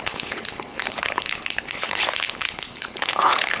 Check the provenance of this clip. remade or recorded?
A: remade